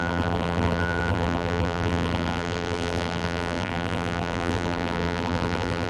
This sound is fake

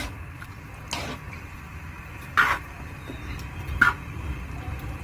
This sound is real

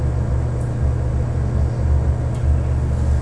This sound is real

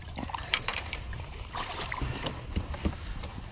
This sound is fake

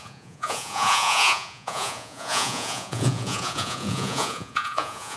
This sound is fake